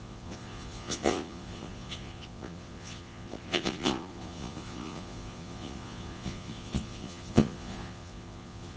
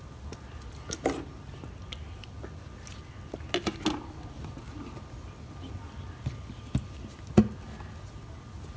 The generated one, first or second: first